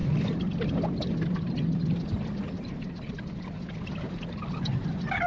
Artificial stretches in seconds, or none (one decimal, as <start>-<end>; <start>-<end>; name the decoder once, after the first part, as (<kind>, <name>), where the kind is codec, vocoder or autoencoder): none